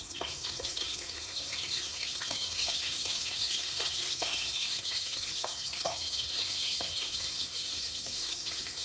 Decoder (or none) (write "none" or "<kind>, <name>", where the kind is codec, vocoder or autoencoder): codec, SNAC